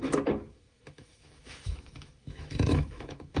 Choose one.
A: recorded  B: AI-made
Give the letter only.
B